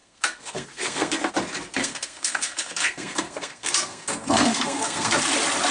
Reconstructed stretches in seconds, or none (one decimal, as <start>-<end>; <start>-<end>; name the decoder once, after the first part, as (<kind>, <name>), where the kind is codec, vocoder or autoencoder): 0.0-1.3 (codec, SNAC); 1.8-5.2